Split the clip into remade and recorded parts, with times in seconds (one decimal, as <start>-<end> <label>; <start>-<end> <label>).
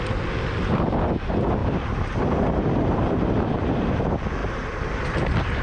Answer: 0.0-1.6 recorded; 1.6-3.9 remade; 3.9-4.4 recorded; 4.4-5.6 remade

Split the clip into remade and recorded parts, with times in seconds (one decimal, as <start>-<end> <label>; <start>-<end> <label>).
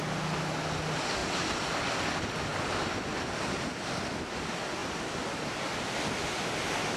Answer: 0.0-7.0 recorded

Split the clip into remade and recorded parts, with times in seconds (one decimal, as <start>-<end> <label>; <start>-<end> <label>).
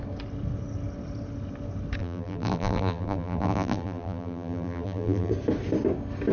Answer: 0.0-2.0 recorded; 2.0-5.3 remade; 5.3-6.3 recorded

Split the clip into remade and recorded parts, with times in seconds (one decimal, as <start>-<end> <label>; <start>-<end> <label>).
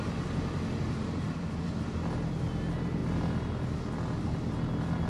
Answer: 0.0-2.3 remade; 2.3-5.1 recorded